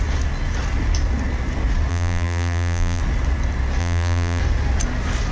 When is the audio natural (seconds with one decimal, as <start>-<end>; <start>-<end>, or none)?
0.0-1.9; 3.0-3.8; 4.4-5.3